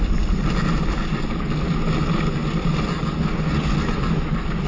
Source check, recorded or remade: recorded